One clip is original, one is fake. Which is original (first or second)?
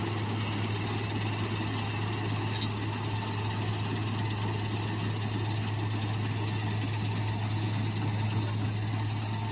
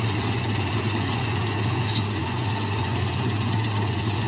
first